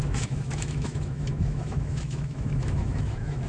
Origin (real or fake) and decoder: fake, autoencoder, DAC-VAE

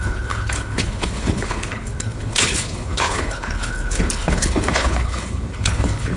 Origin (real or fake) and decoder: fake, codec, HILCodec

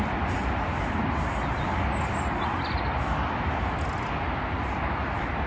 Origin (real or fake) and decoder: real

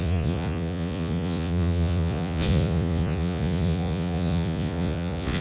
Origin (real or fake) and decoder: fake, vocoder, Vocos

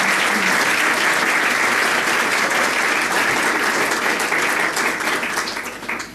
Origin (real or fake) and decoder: real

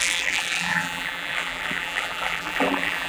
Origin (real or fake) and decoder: fake, vocoder, BigVGAN v2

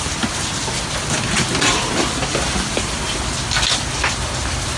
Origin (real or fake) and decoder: real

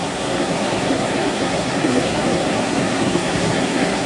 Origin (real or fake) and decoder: fake, codec, SNAC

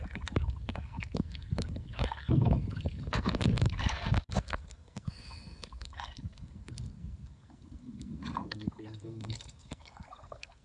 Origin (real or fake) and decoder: fake, codec, SNAC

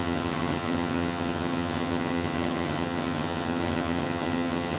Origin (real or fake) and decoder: fake, vocoder, HiFi-GAN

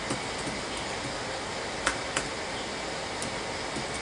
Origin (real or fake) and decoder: real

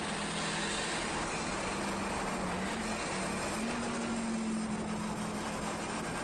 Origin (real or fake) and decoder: real